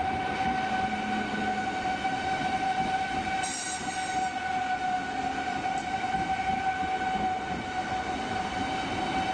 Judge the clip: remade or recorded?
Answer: recorded